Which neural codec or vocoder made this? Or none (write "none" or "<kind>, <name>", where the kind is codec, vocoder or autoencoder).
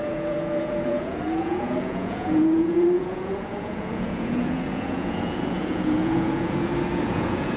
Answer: vocoder, Vocos